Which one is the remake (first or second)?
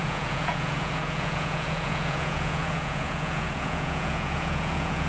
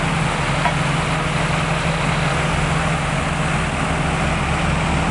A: first